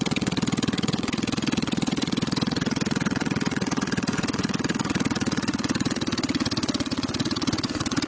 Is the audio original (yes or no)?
no